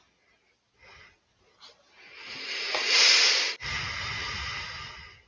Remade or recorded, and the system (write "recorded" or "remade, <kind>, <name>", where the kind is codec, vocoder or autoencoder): recorded